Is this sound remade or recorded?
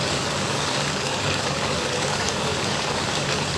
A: remade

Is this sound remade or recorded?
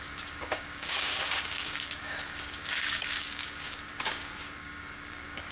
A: remade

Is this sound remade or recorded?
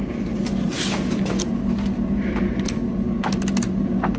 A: recorded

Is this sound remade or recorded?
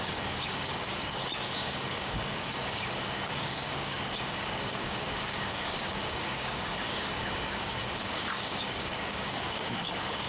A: remade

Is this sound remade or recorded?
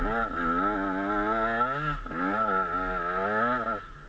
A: recorded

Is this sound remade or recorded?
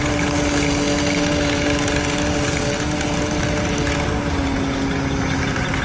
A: recorded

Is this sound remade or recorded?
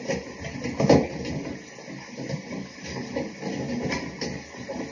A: recorded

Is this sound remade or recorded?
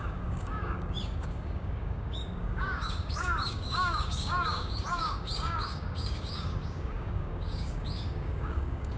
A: remade